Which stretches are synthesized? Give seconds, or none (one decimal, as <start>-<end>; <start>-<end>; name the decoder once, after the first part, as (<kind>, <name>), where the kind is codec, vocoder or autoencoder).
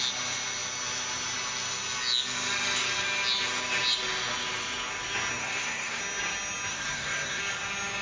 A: 5.4-6.0 (codec, SNAC); 6.7-7.4